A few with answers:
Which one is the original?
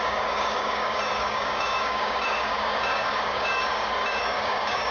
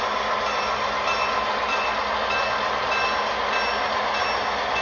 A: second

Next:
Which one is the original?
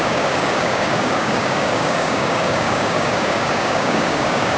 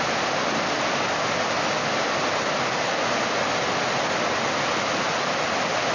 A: second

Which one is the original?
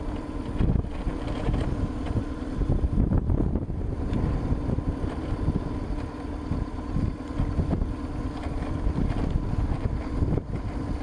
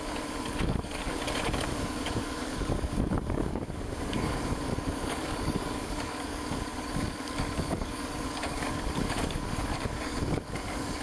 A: first